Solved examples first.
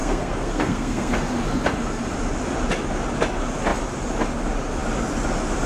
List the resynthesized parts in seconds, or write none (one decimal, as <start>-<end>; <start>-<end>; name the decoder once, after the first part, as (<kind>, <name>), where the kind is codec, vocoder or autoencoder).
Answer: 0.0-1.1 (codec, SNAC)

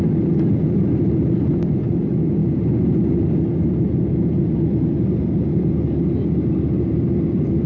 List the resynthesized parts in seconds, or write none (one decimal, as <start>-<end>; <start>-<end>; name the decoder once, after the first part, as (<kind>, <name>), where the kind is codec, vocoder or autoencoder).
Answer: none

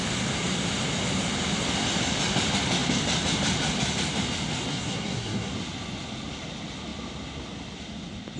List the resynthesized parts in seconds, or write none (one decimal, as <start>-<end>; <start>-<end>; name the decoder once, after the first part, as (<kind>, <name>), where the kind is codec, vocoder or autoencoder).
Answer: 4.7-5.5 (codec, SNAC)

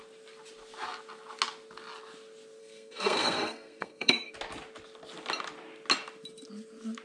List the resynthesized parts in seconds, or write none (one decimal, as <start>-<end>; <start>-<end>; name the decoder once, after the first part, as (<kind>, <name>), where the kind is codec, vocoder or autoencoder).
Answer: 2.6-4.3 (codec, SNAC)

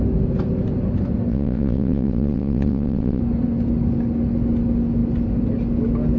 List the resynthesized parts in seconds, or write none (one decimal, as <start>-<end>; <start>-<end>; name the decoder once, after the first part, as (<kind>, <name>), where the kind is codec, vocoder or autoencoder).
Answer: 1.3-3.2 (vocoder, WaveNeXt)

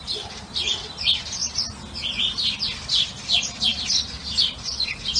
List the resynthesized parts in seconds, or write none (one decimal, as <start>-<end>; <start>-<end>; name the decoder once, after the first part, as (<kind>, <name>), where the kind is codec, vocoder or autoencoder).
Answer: none

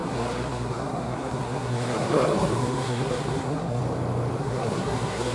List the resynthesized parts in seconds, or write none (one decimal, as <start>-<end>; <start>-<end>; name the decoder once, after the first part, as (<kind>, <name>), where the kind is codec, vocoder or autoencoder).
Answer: 0.0-3.8 (codec, SNAC); 4.4-5.3

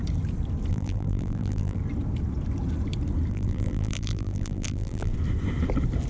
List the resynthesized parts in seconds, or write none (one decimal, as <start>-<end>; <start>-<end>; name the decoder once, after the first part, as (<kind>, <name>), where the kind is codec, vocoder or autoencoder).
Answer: 0.7-1.8 (vocoder, BigVGAN v2); 3.3-5.1